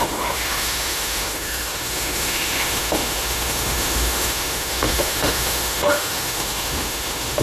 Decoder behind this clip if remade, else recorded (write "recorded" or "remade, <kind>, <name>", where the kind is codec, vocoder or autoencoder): remade, autoencoder, DAC-VAE